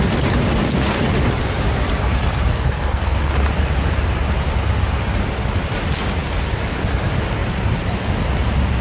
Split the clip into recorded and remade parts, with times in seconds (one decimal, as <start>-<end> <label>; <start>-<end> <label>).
0.0-2.5 recorded; 2.5-3.3 remade; 3.3-8.8 recorded